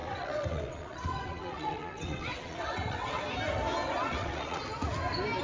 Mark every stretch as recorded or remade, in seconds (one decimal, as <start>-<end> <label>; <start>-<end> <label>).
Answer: 0.0-3.2 remade; 3.2-4.0 recorded; 4.0-4.6 remade; 4.6-5.4 recorded